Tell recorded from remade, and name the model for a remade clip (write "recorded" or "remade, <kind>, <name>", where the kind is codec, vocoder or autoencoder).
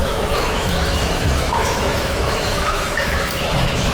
remade, autoencoder, DAC-VAE